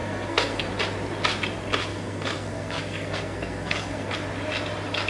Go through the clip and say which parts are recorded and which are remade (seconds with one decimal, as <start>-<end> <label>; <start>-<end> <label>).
0.0-0.6 remade; 0.6-1.9 recorded; 1.9-4.1 remade; 4.1-5.1 recorded